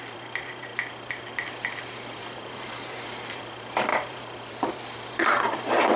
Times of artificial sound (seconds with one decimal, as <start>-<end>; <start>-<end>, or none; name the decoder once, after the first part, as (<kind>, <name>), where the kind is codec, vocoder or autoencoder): 0.0-0.7 (vocoder, BigVGAN v2); 2.2-6.0